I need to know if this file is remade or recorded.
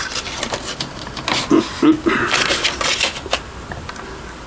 recorded